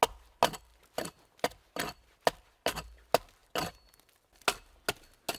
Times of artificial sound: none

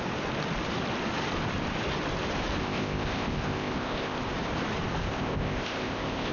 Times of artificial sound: 2.6-4.2 (codec, ZipCodec); 5.0-6.3

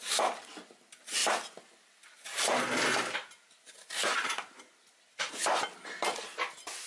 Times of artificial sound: none

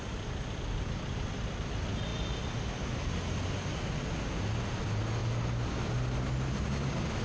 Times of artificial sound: none